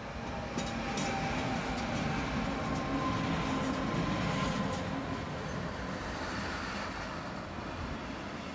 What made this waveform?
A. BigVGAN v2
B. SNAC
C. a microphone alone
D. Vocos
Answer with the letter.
C